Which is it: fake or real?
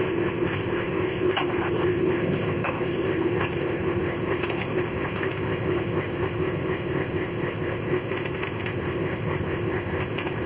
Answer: fake